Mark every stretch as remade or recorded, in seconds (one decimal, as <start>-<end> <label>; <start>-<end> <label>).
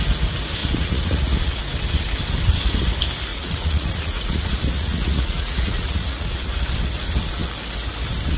0.0-0.6 recorded; 0.6-1.6 remade; 1.6-3.3 recorded; 3.3-6.6 remade; 6.6-8.4 recorded